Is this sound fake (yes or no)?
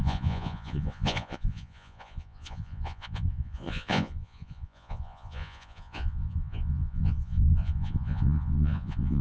yes